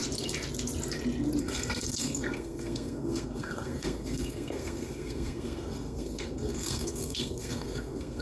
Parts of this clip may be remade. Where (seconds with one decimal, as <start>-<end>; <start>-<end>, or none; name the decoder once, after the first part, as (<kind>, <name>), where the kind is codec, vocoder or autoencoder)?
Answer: 1.4-8.2 (codec, SNAC)